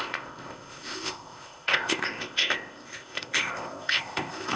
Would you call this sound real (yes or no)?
no